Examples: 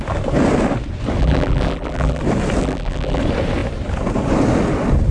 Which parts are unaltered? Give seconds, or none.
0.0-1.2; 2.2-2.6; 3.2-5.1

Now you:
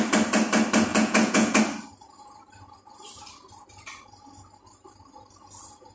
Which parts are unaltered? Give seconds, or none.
0.0-0.9; 1.6-5.9

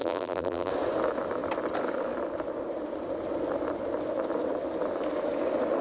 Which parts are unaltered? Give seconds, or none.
0.7-5.8

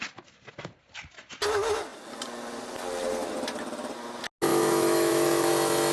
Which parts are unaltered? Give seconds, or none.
0.0-4.5; 5.5-5.9

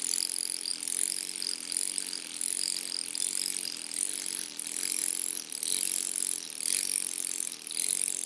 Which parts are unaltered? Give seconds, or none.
5.0-8.3

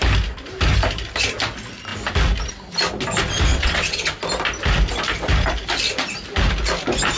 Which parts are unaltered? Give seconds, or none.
0.0-3.5; 4.1-7.2

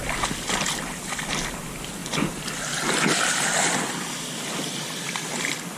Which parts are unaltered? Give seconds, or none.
0.0-5.8